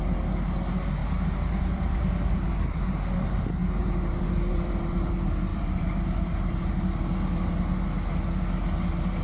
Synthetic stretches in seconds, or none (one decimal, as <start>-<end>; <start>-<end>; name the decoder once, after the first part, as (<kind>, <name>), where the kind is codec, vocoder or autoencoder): 1.0-2.5 (vocoder, BigVGAN v2); 3.6-5.1; 5.5-6.7